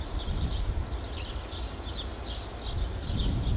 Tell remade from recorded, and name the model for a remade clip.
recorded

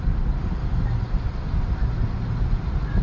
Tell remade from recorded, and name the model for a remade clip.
recorded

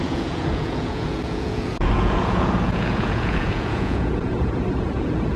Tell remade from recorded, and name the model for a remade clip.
remade, vocoder, Vocos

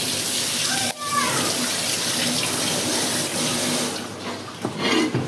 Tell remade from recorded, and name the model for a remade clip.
recorded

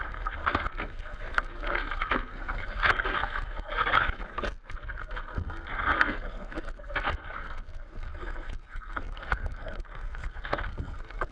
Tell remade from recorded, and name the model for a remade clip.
remade, codec, SNAC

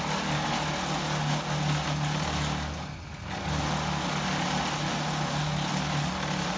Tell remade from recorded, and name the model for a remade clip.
recorded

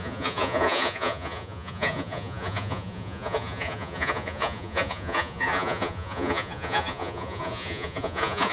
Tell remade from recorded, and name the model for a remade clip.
remade, vocoder, Vocos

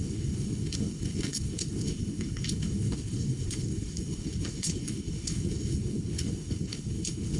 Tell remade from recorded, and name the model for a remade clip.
remade, codec, HILCodec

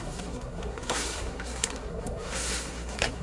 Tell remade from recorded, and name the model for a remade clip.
remade, codec, SNAC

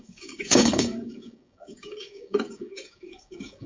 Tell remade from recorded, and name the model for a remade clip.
remade, codec, DAC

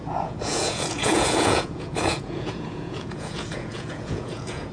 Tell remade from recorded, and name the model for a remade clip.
remade, vocoder, Vocos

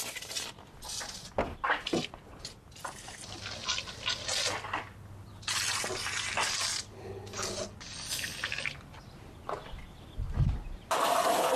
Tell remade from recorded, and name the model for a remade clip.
recorded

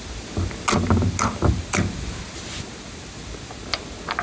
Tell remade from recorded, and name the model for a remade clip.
recorded